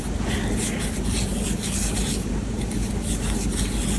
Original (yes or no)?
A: yes